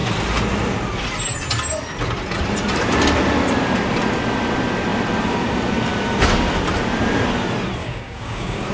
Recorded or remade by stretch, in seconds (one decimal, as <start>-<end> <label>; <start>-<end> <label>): 0.0-7.8 recorded; 7.8-8.7 remade

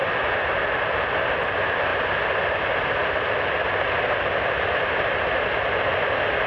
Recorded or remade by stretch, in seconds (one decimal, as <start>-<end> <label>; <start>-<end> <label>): 0.0-6.5 recorded